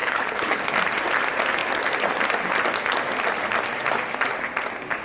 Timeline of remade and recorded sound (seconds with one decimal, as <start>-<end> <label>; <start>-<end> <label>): 0.0-0.6 remade; 0.6-5.0 recorded